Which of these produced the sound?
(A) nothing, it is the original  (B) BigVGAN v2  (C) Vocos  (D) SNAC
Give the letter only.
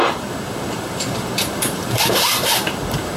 B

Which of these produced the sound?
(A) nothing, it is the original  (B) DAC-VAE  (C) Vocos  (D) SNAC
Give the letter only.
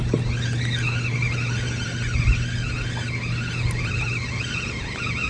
A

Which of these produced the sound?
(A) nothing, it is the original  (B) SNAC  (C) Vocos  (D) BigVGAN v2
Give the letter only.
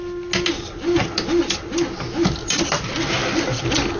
A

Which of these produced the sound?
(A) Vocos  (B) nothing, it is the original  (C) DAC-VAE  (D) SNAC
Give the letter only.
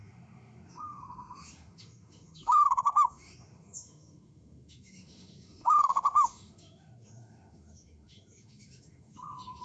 C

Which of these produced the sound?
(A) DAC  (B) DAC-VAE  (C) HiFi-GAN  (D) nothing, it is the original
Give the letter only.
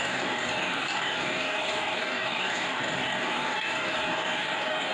A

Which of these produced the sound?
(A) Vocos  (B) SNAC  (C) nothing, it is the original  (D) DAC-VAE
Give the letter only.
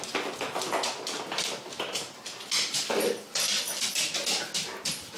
C